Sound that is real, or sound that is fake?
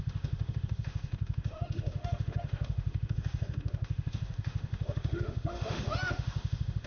fake